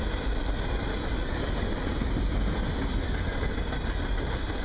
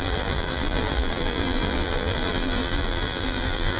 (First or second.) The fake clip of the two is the second